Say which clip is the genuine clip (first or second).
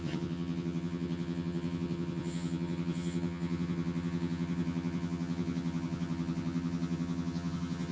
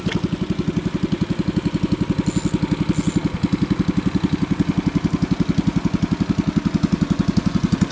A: second